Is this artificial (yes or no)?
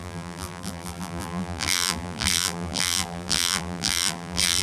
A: yes